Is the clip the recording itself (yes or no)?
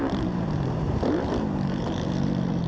no